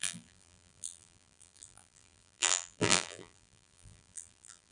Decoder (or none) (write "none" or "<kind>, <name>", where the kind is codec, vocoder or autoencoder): vocoder, BigVGAN v2